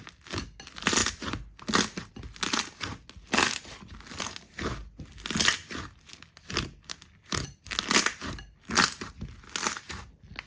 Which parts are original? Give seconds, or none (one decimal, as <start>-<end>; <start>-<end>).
0.0-10.5